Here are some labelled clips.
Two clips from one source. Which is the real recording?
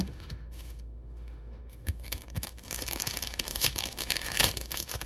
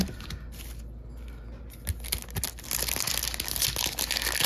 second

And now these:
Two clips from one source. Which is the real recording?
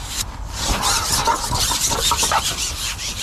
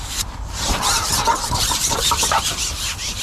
first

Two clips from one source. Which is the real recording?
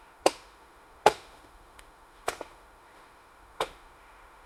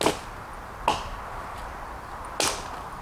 second